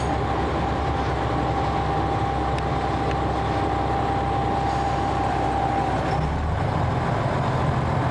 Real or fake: real